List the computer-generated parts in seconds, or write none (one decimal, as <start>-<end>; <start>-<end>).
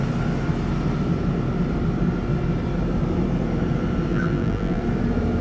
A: 4.1-4.8